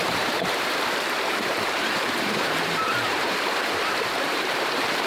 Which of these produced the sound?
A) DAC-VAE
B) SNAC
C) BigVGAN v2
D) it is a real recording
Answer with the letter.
C